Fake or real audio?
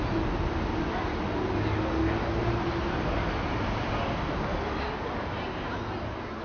real